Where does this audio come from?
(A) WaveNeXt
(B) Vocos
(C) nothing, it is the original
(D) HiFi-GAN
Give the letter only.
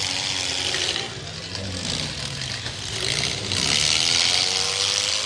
C